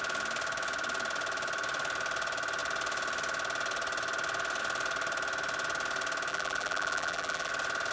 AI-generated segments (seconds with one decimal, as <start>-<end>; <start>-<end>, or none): 6.3-7.5